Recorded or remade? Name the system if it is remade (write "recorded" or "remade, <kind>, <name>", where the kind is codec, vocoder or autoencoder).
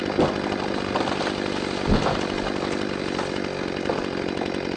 recorded